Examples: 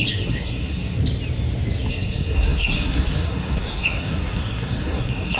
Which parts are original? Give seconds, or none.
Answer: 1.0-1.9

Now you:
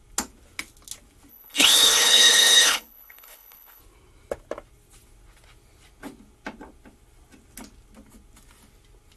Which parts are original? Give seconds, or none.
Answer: 0.0-1.3; 3.8-9.2

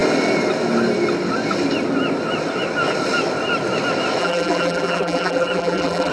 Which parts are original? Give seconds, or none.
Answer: 0.0-4.2

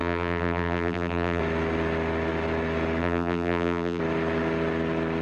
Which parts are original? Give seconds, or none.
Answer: 1.4-3.0; 4.0-5.2

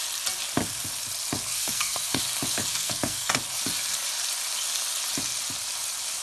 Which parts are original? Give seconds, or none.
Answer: 0.0-1.5; 2.2-2.7; 3.3-6.2